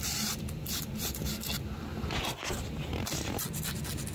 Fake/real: real